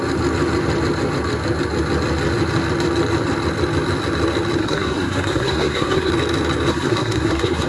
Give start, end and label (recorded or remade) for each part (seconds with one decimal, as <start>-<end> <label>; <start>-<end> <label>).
0.0-4.6 recorded; 4.6-6.1 remade; 6.1-6.7 recorded; 6.7-7.7 remade